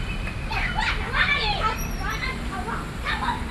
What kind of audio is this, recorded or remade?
remade